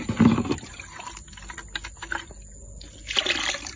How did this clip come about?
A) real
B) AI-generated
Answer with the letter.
A